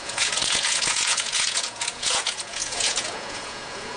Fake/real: fake